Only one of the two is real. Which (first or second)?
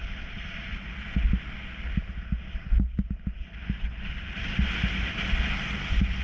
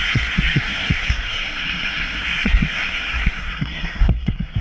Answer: first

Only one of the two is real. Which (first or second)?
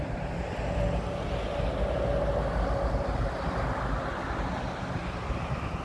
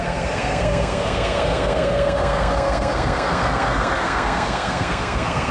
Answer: first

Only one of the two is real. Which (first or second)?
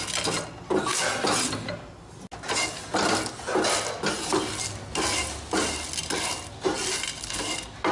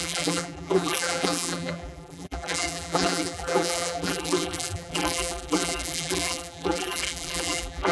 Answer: first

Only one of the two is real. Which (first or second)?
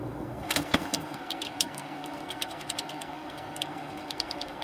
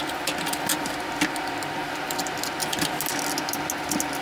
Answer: second